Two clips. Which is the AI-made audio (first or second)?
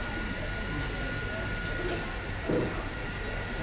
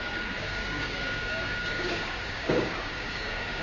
second